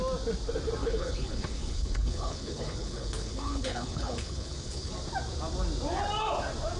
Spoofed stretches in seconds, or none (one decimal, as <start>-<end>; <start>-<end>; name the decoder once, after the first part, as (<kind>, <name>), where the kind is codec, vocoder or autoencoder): 0.8-4.9 (codec, HILCodec)